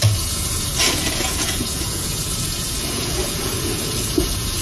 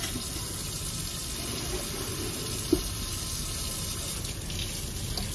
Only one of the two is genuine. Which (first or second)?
second